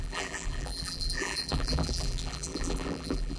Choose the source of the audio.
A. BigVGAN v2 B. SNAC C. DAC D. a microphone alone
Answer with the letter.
A